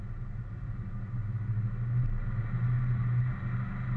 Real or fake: real